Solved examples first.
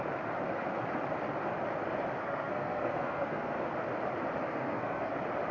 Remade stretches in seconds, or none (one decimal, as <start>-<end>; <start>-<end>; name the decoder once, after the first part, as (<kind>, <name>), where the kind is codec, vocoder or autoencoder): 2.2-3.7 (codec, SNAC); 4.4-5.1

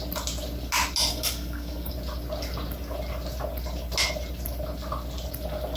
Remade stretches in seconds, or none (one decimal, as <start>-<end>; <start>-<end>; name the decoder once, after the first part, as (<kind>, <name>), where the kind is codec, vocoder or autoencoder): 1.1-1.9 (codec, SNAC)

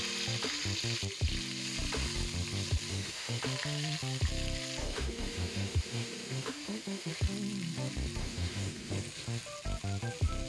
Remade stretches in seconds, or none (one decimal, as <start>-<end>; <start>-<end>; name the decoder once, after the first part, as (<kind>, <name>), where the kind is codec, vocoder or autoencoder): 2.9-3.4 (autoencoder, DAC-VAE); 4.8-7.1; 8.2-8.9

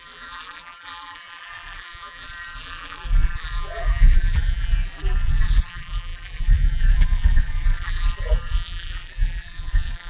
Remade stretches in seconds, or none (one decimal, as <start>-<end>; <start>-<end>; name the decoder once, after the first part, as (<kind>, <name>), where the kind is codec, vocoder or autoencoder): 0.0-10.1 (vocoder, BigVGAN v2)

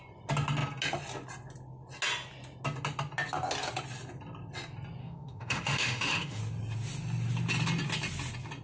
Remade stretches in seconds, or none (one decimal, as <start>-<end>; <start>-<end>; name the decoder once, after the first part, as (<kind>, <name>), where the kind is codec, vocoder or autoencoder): 5.0-6.4 (autoencoder, DAC-VAE)

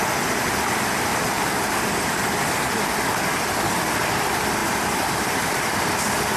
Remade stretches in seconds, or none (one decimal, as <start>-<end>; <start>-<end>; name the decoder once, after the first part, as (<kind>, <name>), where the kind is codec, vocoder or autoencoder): 1.1-2.2 (vocoder, BigVGAN v2); 4.6-6.0

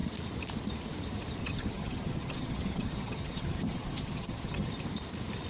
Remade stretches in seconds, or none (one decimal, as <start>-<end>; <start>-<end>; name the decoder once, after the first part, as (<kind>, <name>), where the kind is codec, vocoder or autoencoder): 1.4-4.7 (vocoder, HiFi-GAN)